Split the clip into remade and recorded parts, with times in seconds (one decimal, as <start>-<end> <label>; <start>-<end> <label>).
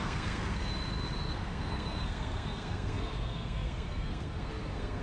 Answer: 0.0-0.7 remade; 0.7-1.3 recorded; 1.3-5.0 remade